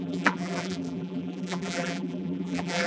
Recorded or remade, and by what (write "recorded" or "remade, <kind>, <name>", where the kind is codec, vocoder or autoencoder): remade, vocoder, BigVGAN v2